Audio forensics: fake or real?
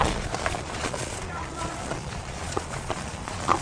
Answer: fake